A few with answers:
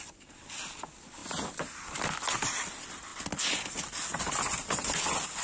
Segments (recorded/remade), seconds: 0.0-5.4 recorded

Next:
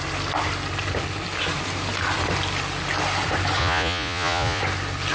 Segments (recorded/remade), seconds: 0.0-3.6 recorded; 3.6-4.6 remade; 4.6-5.1 recorded